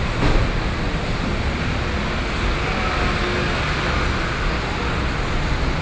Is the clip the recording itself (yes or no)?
yes